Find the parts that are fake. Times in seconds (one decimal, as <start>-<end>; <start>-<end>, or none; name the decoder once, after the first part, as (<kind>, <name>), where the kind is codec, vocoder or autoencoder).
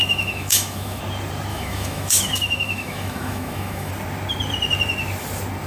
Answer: 0.0-1.0 (autoencoder, DAC-VAE); 1.5-3.9